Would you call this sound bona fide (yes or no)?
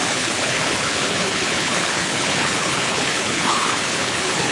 no